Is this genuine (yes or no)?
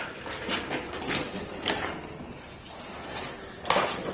yes